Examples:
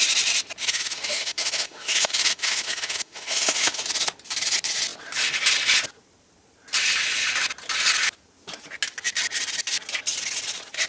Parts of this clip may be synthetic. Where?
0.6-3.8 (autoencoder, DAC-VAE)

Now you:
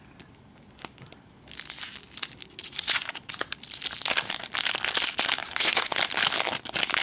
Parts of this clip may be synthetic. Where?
2.6-3.5 (vocoder, Vocos); 5.4-6.0

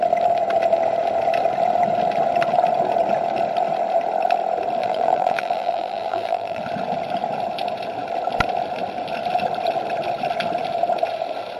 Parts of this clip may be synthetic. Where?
4.8-6.6 (vocoder, BigVGAN v2)